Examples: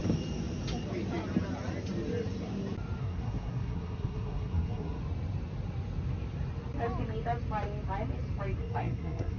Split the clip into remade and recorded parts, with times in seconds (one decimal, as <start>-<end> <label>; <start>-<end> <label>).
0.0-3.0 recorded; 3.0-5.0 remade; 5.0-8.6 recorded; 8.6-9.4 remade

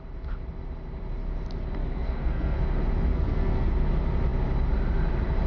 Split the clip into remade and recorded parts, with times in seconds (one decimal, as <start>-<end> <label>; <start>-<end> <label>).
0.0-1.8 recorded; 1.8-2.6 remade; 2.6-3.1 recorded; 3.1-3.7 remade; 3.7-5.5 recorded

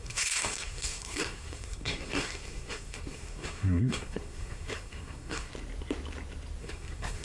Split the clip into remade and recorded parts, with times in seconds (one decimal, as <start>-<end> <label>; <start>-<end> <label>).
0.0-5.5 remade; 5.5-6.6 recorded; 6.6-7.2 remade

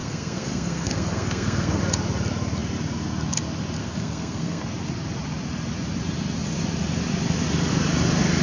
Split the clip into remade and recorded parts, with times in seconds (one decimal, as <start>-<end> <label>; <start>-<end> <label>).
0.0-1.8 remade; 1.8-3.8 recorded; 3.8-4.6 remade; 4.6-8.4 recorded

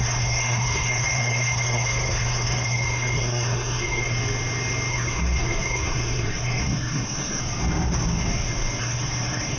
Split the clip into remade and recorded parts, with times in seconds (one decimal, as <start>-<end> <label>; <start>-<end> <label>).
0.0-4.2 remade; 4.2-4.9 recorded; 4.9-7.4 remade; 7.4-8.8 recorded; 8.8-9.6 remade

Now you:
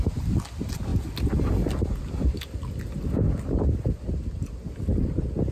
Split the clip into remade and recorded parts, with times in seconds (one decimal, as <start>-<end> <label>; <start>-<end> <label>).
0.0-5.5 recorded